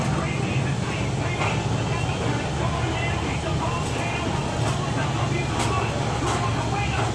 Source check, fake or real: real